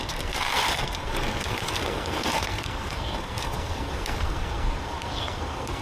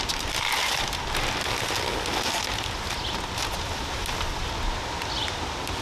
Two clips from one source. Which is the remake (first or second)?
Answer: first